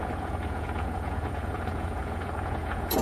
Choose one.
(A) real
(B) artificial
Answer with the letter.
B